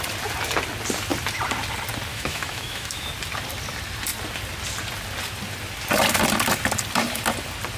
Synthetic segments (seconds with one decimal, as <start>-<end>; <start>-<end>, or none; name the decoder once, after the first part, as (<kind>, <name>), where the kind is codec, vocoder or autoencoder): 2.1-3.1 (autoencoder, DAC-VAE)